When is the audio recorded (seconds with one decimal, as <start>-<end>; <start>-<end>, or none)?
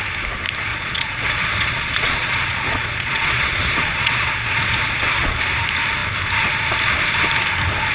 0.0-0.7; 5.4-7.9